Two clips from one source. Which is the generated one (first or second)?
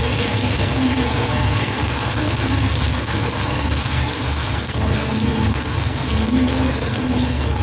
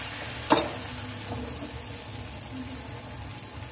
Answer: first